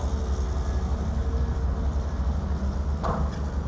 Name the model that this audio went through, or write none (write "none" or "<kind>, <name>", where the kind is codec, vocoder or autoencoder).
none